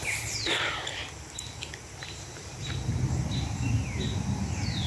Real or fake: real